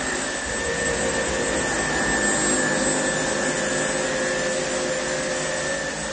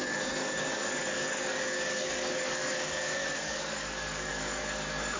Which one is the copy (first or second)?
second